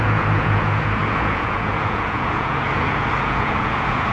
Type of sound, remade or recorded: remade